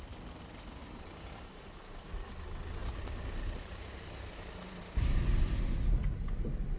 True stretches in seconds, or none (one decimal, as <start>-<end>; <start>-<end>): 0.0-0.8; 2.1-2.8; 5.6-6.8